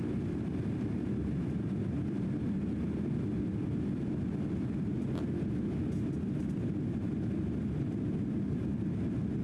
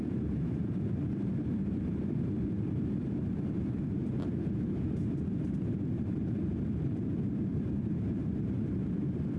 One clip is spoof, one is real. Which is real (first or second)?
first